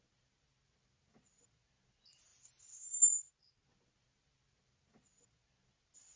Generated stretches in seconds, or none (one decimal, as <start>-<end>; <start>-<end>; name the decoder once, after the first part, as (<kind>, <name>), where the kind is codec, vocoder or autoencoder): none